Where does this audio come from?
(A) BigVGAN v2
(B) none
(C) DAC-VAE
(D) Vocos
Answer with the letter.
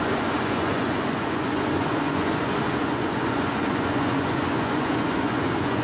D